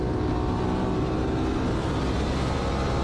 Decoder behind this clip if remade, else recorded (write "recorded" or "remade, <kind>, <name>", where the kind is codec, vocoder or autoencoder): recorded